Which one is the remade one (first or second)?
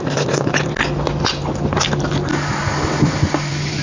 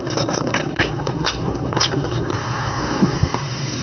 second